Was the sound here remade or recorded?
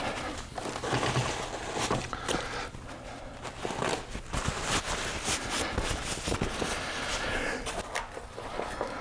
recorded